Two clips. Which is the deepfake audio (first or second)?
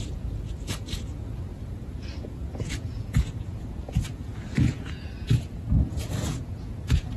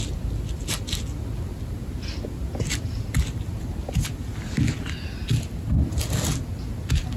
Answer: first